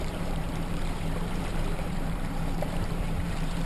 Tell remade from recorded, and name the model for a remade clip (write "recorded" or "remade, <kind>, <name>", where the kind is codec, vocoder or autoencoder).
remade, vocoder, BigVGAN v2